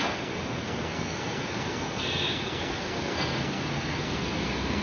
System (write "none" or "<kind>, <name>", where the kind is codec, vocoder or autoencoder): codec, SNAC